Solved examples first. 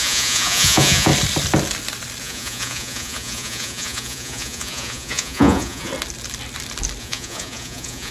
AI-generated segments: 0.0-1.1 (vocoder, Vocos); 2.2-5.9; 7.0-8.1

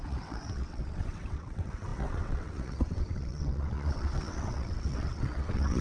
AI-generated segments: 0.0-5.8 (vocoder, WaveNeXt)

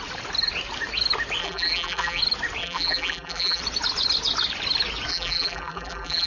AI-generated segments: 1.4-2.2 (vocoder, BigVGAN v2); 2.6-3.6; 5.1-6.3

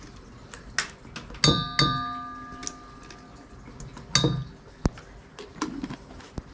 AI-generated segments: none